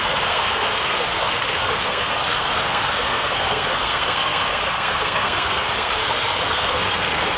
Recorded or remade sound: remade